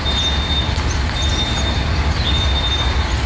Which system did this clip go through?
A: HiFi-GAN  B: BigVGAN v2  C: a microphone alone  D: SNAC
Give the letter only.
C